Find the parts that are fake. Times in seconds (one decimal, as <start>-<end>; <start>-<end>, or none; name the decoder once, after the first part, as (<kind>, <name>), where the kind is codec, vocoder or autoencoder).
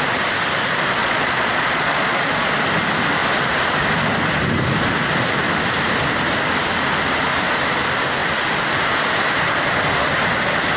1.0-2.5 (vocoder, Vocos)